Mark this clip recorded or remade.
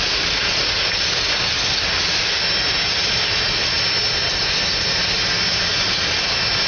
recorded